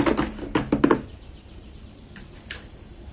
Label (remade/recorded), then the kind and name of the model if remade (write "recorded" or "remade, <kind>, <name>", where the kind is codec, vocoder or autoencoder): recorded